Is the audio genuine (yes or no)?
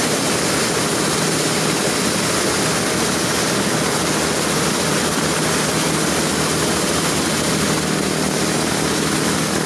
yes